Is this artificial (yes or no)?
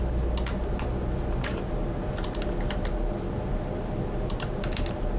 no